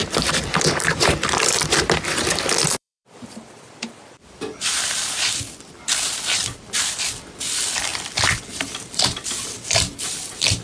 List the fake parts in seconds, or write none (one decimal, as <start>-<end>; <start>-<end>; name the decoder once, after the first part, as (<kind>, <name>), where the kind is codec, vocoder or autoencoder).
0.0-10.6 (vocoder, BigVGAN v2)